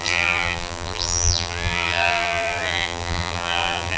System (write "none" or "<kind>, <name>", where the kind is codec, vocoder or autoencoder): vocoder, BigVGAN v2